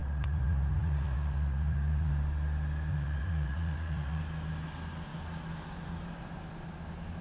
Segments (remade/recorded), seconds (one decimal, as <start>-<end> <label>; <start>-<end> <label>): 0.0-2.1 remade; 2.1-2.9 recorded; 2.9-4.2 remade; 4.2-7.2 recorded